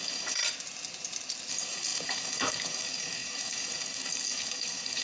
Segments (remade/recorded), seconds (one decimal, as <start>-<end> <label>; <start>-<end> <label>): 0.0-0.4 remade; 0.4-1.5 recorded; 1.5-5.0 remade